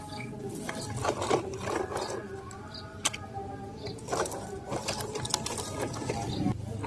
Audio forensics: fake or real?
real